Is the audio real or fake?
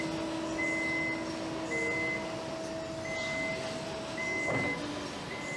real